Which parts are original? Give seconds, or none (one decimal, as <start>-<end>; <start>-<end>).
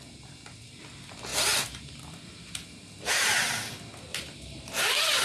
0.0-1.3; 2.0-4.1; 4.8-5.2